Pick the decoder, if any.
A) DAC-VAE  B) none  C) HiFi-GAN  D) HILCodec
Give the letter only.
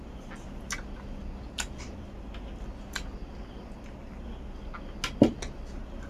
B